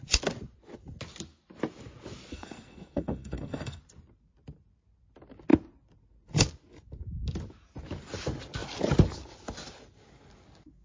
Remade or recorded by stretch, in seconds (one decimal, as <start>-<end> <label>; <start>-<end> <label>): 0.0-2.3 recorded; 2.3-3.8 remade; 3.8-10.8 recorded

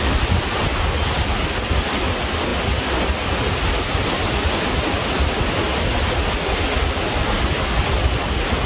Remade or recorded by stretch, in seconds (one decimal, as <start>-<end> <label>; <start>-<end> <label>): 0.0-8.7 recorded